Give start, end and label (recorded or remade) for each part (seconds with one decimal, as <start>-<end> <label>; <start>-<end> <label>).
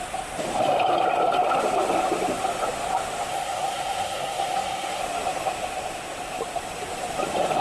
0.0-3.3 recorded; 3.3-5.0 remade; 5.0-7.6 recorded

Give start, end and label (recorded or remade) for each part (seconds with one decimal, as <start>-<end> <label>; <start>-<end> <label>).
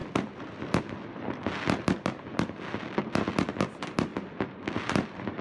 0.0-5.4 recorded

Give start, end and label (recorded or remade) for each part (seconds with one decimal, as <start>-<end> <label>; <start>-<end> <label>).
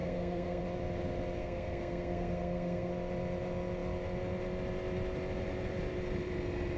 0.0-0.6 remade; 0.6-1.4 recorded; 1.4-2.9 remade; 2.9-6.8 recorded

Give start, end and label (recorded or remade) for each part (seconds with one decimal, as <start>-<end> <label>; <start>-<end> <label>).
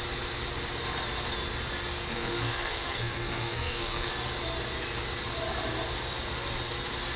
0.0-2.1 recorded; 2.1-4.1 remade; 4.1-7.2 recorded